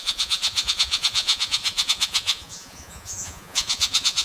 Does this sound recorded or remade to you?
remade